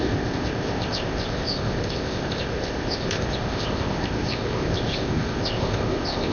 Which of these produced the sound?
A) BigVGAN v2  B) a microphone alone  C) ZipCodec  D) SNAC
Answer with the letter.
C